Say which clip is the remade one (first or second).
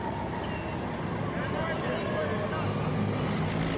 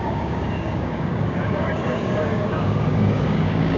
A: second